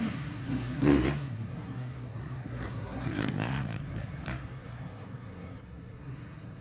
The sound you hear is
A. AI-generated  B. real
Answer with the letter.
A